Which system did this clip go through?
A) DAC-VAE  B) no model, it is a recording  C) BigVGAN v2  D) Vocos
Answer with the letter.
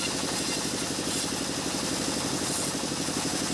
B